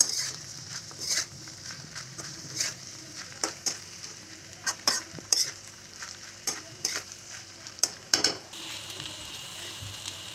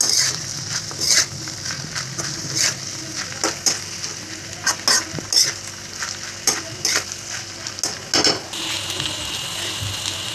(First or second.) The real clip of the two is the second